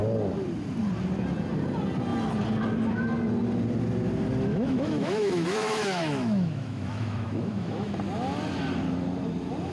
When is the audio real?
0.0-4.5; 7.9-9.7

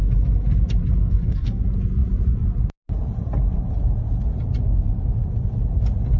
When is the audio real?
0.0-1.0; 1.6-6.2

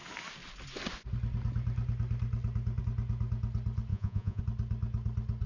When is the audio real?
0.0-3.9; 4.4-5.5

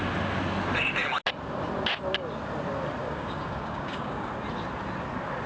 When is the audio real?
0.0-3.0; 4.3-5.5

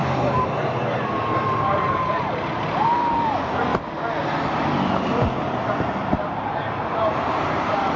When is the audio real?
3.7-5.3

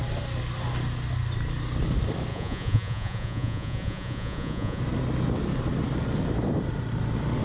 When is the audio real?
0.0-2.3; 4.8-7.4

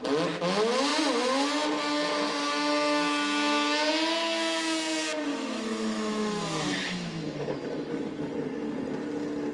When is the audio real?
0.0-5.3; 8.2-9.5

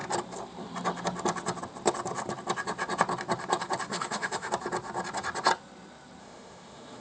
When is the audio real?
0.0-3.9; 4.5-6.2